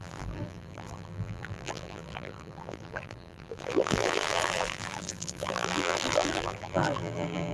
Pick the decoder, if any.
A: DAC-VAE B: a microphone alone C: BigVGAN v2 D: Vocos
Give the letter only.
C